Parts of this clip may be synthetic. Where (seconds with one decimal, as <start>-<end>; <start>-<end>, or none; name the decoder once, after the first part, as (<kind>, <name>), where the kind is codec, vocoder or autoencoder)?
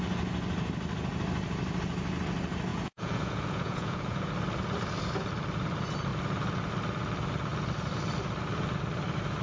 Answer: 2.7-4.3 (vocoder, Vocos)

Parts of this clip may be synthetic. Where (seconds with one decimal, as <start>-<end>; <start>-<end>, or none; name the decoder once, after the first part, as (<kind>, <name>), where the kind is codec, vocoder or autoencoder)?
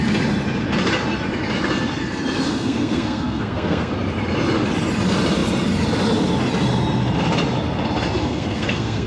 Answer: 2.5-3.9 (codec, SNAC); 8.2-9.1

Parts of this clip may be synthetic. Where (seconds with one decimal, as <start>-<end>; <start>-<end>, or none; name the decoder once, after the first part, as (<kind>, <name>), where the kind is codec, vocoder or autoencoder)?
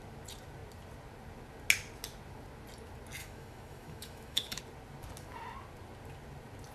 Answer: 3.2-4.6 (autoencoder, DAC-VAE)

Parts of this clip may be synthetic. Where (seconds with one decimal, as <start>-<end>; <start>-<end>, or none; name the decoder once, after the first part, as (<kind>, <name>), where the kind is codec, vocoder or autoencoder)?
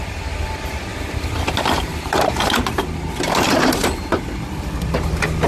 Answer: none